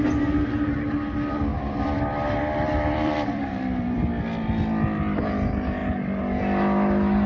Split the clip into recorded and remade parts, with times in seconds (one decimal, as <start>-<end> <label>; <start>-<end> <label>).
0.0-1.5 recorded; 1.5-4.0 remade; 4.0-7.3 recorded